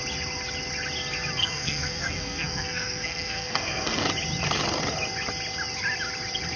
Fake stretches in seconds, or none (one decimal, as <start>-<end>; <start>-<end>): 1.4-4.0